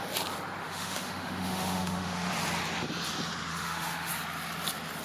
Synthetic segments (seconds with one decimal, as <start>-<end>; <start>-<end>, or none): 0.6-2.3; 3.5-4.1